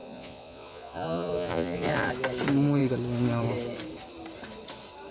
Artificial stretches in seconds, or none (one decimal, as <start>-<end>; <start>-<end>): 0.0-2.1